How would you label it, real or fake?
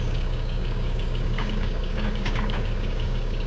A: fake